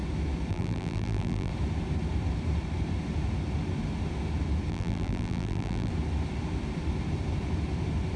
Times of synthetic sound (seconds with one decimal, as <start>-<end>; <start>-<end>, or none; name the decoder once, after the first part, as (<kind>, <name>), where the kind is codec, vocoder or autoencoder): 0.5-1.5 (vocoder, BigVGAN v2); 4.7-5.9